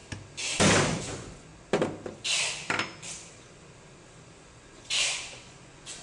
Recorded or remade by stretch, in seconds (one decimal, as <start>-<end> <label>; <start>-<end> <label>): 0.0-1.0 recorded; 1.0-1.5 remade; 1.5-4.1 recorded; 4.1-6.0 remade